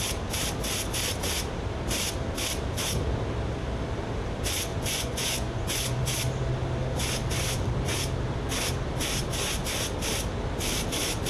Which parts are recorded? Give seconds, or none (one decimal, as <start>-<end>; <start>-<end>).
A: 0.0-4.7; 6.0-11.3